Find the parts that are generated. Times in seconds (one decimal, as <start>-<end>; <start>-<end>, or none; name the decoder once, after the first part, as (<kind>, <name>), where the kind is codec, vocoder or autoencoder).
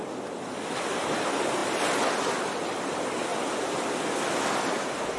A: none